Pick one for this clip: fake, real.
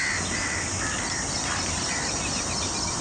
real